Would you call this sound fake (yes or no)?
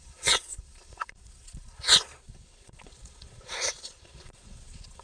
yes